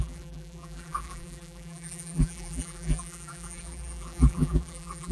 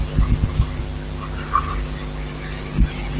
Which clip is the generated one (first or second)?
first